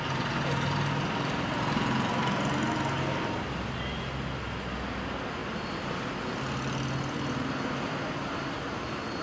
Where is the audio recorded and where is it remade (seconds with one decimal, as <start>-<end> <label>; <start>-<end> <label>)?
0.0-9.2 recorded